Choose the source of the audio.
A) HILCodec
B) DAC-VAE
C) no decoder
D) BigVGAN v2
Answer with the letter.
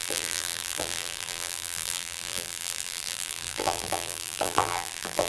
D